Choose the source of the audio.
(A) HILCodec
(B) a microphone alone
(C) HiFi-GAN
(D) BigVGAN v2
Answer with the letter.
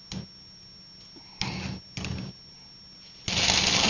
B